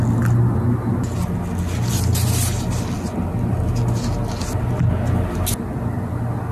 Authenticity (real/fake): real